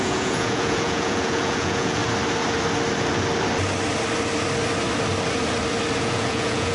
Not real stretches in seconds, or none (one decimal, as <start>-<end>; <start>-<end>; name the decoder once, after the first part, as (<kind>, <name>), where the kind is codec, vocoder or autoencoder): 0.0-2.0 (vocoder, Vocos); 6.0-6.7